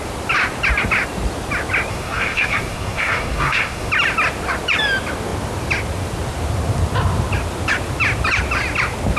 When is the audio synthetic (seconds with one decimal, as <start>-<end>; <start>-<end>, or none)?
1.9-3.9